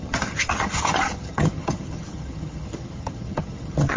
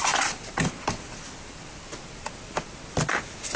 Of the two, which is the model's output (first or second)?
first